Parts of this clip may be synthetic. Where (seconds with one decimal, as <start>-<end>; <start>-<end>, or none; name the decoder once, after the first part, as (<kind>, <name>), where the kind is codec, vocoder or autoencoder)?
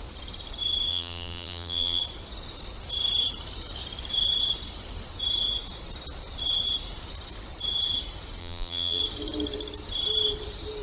0.9-2.0 (vocoder, BigVGAN v2); 8.4-9.0